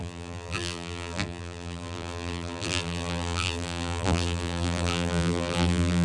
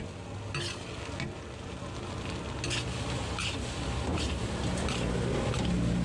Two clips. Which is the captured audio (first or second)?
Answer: second